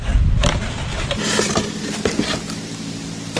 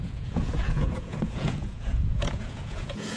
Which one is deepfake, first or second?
second